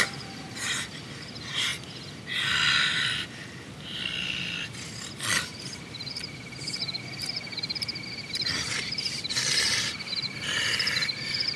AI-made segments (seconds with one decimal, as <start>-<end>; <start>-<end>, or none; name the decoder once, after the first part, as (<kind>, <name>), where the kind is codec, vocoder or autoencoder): 0.0-1.7 (vocoder, BigVGAN v2); 5.4-11.6